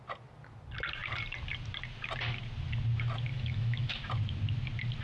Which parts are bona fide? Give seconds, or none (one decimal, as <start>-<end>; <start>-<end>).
0.0-3.3; 4.1-5.0